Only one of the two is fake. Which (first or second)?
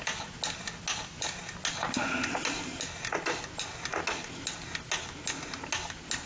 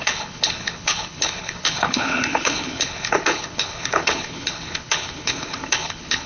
second